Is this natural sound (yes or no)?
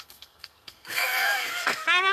no